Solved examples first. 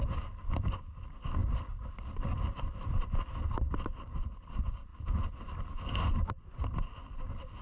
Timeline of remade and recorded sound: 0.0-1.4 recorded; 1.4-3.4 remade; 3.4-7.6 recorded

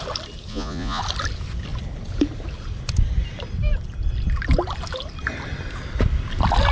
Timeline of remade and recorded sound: 0.0-0.5 recorded; 0.5-1.0 remade; 1.0-6.7 recorded

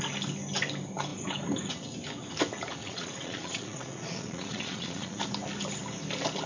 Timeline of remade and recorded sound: 0.0-2.8 recorded; 2.8-5.2 remade; 5.2-6.5 recorded